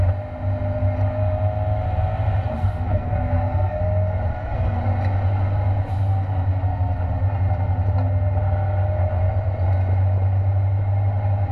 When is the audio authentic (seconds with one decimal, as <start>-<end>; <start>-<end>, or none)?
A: 0.0-2.6; 3.8-4.3; 4.8-11.5